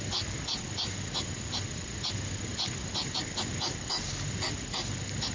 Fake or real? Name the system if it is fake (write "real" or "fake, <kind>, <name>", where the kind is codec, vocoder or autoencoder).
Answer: real